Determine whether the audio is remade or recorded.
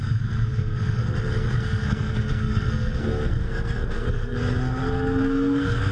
remade